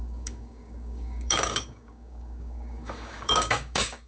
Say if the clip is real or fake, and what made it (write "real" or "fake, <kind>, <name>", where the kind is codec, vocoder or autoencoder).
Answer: fake, codec, DAC